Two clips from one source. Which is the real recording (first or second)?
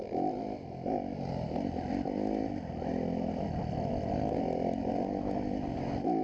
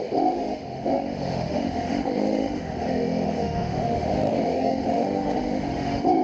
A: first